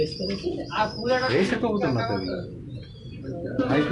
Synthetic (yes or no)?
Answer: no